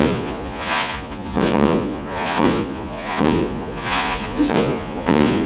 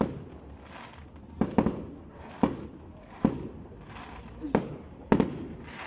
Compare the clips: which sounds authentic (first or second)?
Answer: second